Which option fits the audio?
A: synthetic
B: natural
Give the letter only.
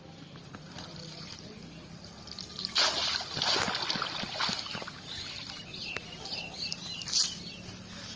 B